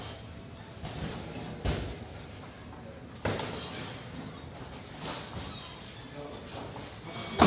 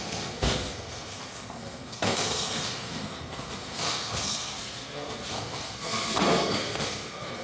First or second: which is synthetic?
second